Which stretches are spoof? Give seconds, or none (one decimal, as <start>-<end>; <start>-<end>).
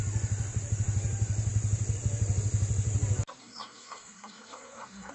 3.4-5.1